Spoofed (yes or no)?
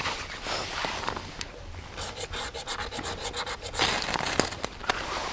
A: no